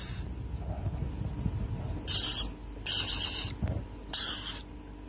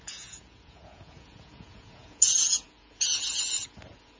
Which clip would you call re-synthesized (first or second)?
second